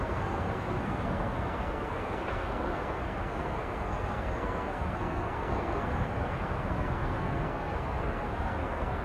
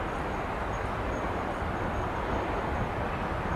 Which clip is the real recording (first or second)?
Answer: second